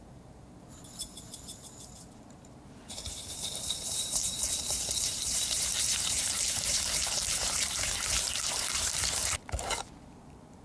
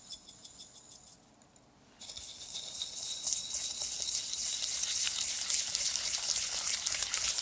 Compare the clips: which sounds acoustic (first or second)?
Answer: second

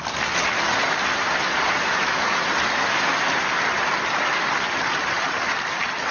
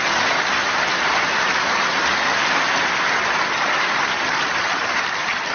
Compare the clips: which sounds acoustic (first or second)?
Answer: first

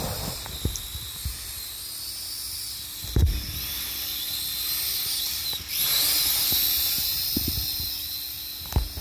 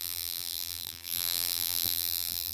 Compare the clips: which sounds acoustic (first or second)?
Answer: first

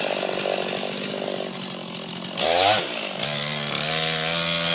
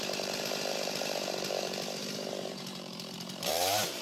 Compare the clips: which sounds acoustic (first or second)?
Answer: first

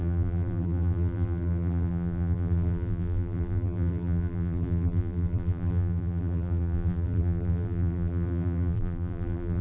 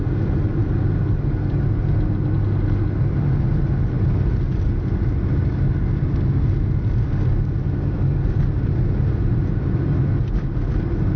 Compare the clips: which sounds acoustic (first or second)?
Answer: second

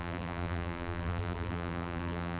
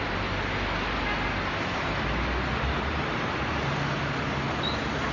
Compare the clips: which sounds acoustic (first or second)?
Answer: second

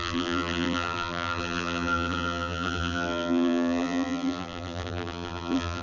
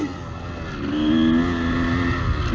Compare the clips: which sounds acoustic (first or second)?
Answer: second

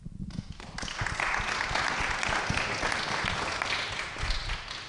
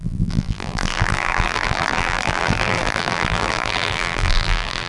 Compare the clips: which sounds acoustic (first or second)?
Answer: first